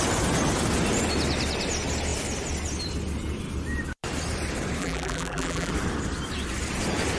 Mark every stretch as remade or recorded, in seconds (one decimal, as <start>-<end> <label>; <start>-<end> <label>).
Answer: 0.0-4.8 recorded; 4.8-5.7 remade; 5.7-7.2 recorded